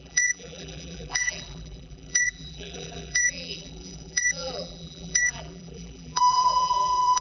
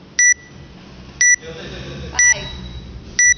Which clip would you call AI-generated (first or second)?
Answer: first